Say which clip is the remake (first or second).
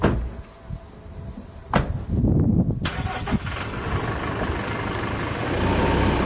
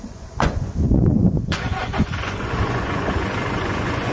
second